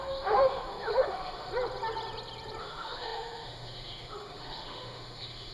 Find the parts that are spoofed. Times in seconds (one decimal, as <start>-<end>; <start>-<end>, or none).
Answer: 0.0-1.5; 2.6-5.5